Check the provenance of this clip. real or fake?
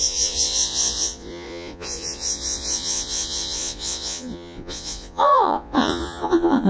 fake